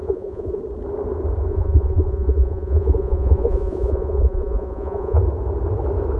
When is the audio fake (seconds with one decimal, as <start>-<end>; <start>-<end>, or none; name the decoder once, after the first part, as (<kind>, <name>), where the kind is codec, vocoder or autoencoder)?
0.0-0.6 (vocoder, Vocos); 1.5-5.2